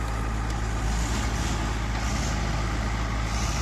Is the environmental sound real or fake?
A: real